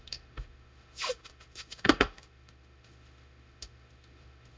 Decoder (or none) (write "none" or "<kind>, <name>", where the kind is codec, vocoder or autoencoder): autoencoder, DAC-VAE